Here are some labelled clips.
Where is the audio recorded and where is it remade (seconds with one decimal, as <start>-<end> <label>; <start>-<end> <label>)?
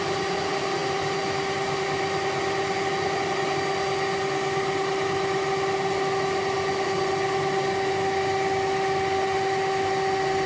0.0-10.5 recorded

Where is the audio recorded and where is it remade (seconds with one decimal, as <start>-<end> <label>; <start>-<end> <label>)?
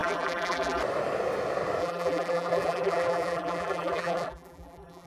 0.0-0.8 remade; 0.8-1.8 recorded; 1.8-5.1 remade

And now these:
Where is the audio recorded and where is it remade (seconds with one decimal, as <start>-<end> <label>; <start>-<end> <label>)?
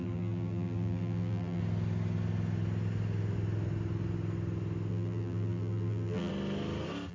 0.0-1.6 remade; 1.6-4.9 recorded; 4.9-6.3 remade; 6.3-7.1 recorded